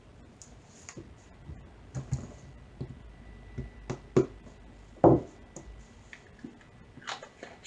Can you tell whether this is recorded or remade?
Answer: recorded